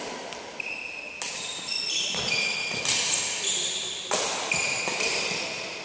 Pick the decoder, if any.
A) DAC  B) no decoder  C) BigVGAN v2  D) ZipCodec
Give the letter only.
B